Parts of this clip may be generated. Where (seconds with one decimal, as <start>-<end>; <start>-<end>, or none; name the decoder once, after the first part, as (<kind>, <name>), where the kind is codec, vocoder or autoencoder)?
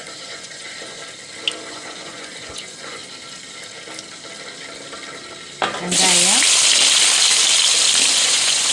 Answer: 0.0-1.0 (vocoder, Vocos); 1.7-3.0; 8.1-8.7